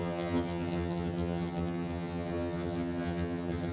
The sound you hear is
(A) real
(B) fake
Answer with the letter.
B